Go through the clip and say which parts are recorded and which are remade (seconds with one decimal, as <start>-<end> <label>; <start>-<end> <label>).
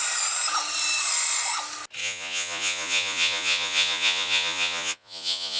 0.0-2.0 recorded; 2.0-5.6 remade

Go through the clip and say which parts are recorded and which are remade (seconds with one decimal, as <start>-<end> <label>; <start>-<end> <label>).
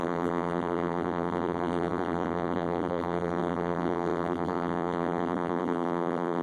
0.0-6.4 remade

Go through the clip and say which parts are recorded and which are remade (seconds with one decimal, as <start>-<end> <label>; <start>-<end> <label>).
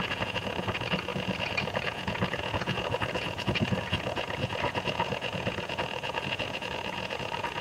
0.0-7.6 remade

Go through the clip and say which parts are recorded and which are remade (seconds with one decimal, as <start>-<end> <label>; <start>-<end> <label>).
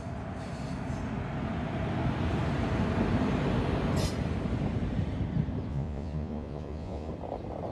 0.0-5.7 recorded; 5.7-7.1 remade; 7.1-7.7 recorded